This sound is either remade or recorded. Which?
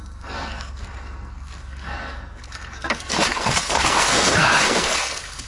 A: remade